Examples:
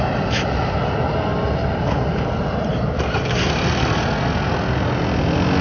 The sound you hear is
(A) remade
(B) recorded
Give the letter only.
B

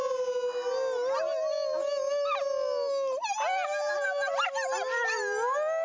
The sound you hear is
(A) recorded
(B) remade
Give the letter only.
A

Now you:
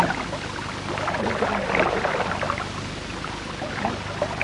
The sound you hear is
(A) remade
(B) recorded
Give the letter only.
A